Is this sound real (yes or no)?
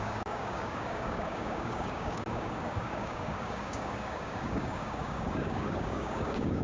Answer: no